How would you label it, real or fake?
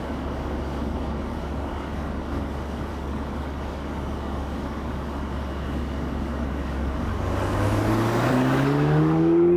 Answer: fake